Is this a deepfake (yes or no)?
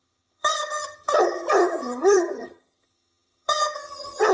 yes